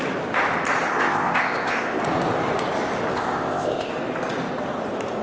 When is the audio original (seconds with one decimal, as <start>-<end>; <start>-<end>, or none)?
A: 0.0-0.9; 2.0-3.1; 3.9-5.2